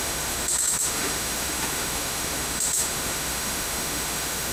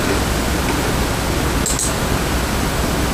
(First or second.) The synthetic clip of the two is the first